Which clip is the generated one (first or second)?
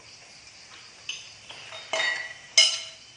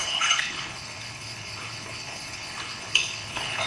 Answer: second